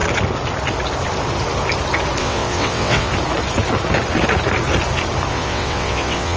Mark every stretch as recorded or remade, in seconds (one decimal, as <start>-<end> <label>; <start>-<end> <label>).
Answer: 0.0-2.2 recorded; 2.2-3.1 remade; 3.1-5.3 recorded; 5.3-6.4 remade